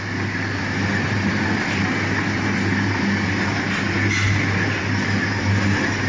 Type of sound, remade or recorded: recorded